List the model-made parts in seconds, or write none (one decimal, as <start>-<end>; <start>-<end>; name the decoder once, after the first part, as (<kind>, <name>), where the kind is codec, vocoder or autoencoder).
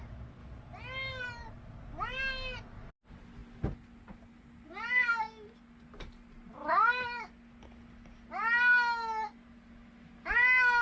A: none